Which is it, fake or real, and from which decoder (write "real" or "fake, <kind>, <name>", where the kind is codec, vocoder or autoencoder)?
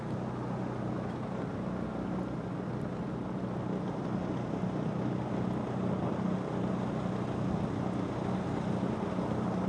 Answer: real